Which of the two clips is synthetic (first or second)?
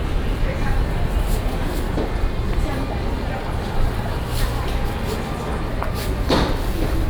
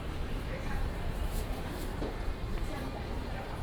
second